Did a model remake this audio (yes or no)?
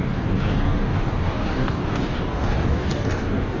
yes